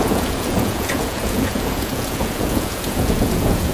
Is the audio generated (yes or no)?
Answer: yes